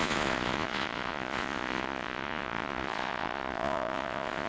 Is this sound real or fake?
fake